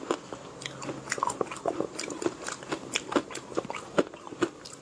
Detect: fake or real real